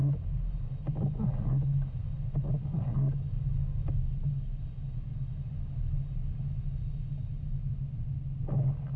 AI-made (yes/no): no